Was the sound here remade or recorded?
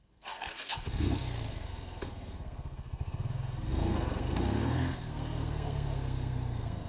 remade